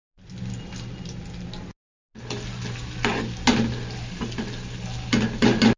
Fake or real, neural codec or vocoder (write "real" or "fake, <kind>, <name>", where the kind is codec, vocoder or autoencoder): real